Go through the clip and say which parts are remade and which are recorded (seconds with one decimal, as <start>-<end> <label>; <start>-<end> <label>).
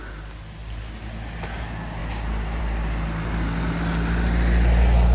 0.0-5.1 recorded